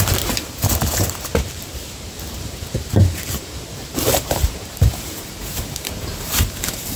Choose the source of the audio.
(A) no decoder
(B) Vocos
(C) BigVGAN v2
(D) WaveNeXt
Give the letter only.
C